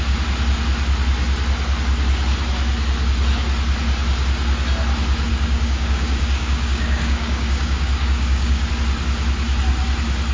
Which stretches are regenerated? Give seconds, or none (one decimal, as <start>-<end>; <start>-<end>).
5.3-8.7